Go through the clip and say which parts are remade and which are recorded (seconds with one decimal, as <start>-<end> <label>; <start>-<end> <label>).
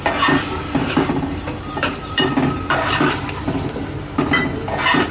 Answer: 0.0-0.8 recorded; 0.8-3.3 remade; 3.3-5.1 recorded